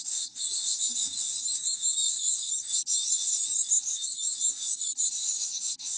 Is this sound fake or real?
fake